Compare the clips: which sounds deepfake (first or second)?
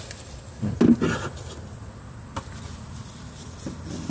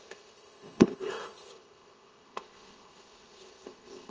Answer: second